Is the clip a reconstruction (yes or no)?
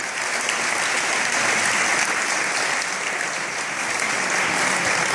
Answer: no